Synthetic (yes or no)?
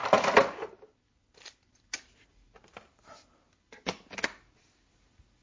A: no